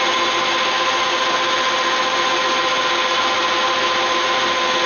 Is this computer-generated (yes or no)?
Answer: no